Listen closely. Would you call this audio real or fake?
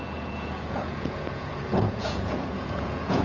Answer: fake